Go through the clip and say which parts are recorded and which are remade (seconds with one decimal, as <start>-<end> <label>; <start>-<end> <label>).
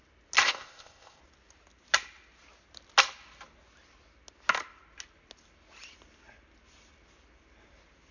0.0-0.4 recorded; 0.4-1.2 remade; 1.2-8.1 recorded